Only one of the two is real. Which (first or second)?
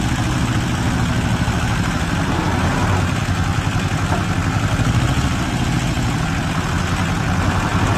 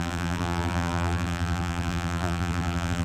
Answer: first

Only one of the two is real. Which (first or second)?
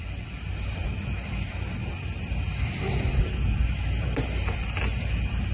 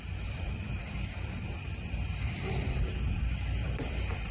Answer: first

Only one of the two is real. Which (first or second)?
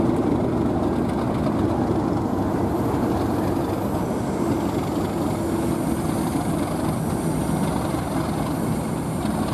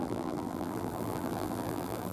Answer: first